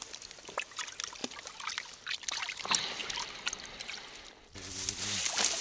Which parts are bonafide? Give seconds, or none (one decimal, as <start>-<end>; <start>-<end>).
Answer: 0.0-5.6